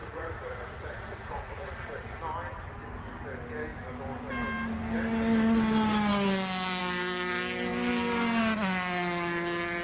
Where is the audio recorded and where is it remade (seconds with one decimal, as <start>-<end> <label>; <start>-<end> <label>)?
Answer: 0.0-2.2 remade; 2.2-9.8 recorded